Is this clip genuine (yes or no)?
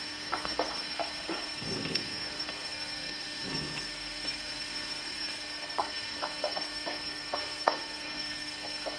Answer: no